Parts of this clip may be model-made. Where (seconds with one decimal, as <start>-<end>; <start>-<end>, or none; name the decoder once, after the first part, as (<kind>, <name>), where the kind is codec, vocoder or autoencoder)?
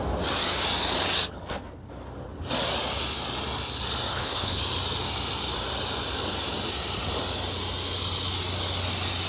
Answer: 1.3-1.9 (codec, HILCodec); 4.1-4.6